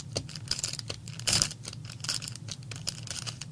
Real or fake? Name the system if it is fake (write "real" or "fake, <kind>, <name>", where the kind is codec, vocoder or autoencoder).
real